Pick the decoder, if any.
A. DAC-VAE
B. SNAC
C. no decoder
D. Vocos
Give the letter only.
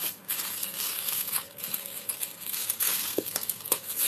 B